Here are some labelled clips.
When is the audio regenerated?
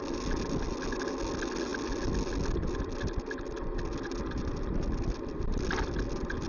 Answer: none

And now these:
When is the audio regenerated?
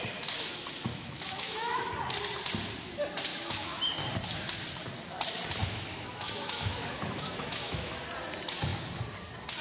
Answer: 0.9-1.9 (autoencoder, DAC-VAE); 3.3-3.8; 5.6-8.0